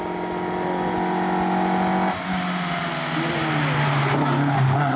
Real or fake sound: real